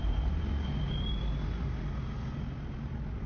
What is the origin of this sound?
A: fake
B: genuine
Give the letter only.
B